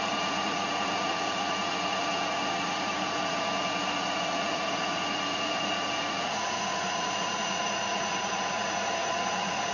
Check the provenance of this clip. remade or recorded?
remade